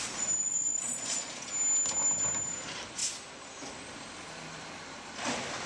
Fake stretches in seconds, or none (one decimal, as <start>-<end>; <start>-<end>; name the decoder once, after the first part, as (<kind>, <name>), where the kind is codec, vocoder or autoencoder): 0.7-1.5 (vocoder, Vocos)